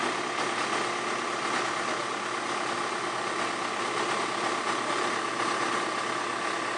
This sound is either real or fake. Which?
real